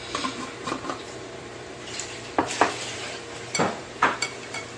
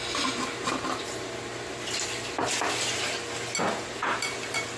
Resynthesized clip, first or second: first